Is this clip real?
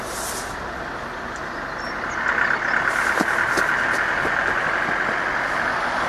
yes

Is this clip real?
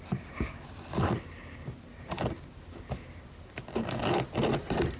yes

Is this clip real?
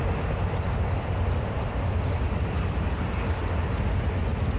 yes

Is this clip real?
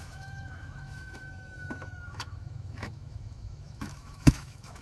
no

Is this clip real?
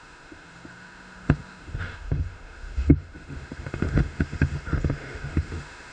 no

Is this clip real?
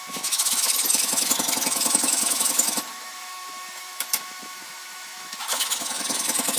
no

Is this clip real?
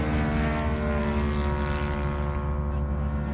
yes